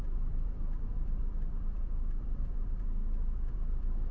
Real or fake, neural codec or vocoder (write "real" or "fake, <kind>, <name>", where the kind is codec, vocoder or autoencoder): fake, vocoder, BigVGAN v2